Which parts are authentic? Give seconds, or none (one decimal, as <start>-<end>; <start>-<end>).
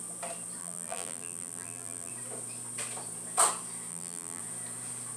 0.0-0.6; 2.1-3.9; 4.4-5.2